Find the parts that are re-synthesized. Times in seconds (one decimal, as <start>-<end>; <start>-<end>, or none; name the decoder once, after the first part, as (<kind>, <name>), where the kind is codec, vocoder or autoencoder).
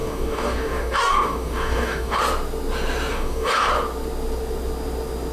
0.0-2.2 (codec, DAC); 3.1-3.7